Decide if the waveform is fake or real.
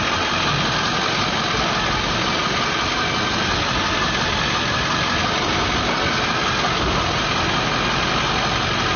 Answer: real